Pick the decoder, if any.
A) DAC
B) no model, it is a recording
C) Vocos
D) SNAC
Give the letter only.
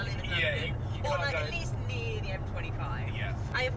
B